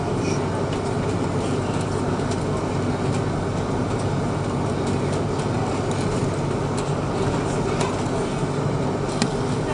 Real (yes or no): yes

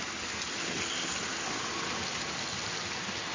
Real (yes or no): yes